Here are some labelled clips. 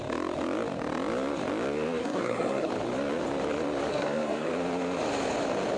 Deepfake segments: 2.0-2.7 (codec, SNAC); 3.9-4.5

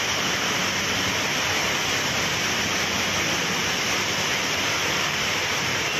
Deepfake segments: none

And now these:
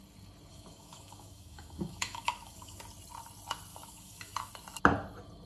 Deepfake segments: 0.5-2.8 (autoencoder, DAC-VAE); 3.7-4.5

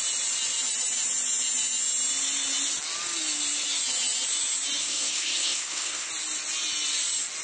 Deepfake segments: 4.8-6.1 (codec, SNAC)